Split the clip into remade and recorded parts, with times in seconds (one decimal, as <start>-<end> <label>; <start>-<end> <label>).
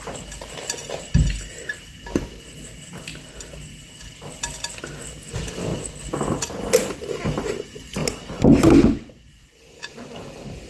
0.0-10.7 recorded